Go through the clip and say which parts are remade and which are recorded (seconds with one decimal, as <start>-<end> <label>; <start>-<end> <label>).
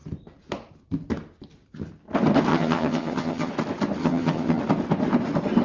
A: 0.0-2.5 recorded; 2.5-3.5 remade; 3.5-4.0 recorded; 4.0-4.6 remade; 4.6-5.6 recorded